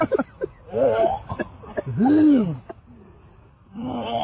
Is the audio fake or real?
real